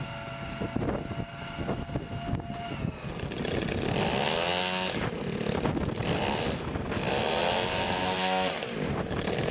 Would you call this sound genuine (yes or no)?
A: yes